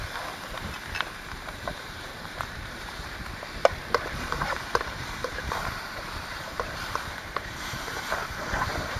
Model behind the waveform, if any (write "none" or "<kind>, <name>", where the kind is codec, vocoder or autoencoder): vocoder, BigVGAN v2